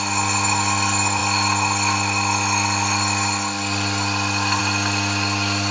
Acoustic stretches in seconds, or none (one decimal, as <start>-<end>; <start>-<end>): 0.0-5.7